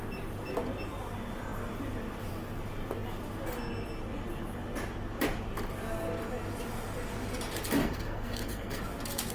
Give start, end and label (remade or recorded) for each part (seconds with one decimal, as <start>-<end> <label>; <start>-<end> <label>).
0.0-7.8 recorded; 7.8-8.8 remade; 8.8-9.3 recorded